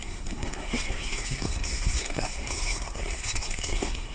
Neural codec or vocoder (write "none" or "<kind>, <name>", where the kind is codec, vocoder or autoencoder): codec, SNAC